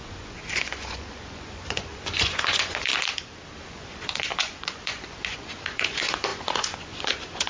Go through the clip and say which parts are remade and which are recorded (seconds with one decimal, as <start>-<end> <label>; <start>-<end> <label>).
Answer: 0.0-2.9 remade; 2.9-3.6 recorded; 3.6-7.5 remade